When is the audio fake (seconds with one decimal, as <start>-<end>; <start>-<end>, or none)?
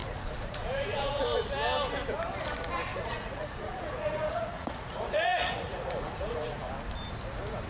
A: 0.0-1.2; 2.9-6.7